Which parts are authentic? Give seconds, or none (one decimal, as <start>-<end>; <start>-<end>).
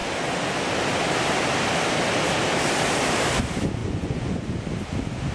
0.0-3.8; 4.6-5.3